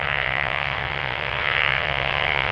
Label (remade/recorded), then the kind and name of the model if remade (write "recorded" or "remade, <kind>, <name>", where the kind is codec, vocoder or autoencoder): remade, vocoder, WaveNeXt